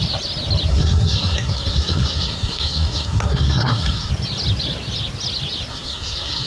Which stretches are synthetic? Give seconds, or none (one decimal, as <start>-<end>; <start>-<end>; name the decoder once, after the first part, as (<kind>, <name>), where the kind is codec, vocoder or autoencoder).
0.7-4.1 (codec, SNAC); 5.7-6.5

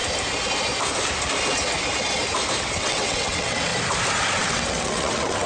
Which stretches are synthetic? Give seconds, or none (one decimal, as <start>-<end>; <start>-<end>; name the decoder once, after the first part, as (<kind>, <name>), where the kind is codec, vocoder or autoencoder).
2.6-3.7 (vocoder, WaveNeXt); 4.4-5.5